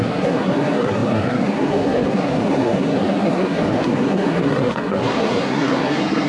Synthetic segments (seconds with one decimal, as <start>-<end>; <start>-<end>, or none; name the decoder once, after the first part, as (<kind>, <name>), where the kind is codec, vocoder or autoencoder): 0.0-6.3 (codec, SNAC)